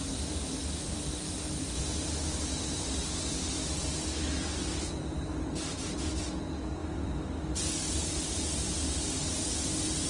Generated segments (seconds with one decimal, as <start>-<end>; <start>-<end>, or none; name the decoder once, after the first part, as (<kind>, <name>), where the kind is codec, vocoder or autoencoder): none